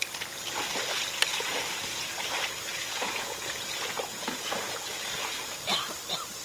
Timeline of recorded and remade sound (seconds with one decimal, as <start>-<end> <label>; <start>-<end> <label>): 0.0-1.3 recorded; 1.3-2.0 remade; 2.0-2.7 recorded; 2.7-5.6 remade; 5.6-6.4 recorded